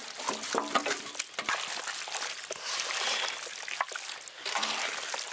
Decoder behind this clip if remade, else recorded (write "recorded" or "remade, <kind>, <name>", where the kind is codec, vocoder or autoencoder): recorded